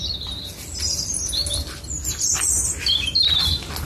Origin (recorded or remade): recorded